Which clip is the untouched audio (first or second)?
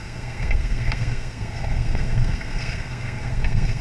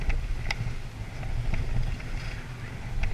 second